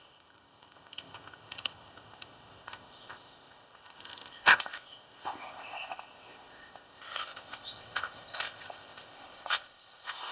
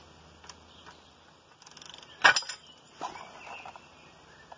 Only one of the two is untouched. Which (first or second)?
second